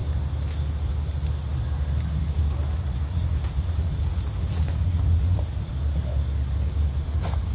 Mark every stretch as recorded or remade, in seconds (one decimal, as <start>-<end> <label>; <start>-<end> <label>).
0.0-3.1 recorded; 3.1-5.7 remade; 5.7-7.5 recorded